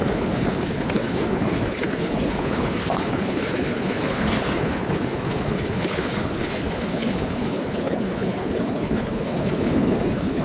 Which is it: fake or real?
fake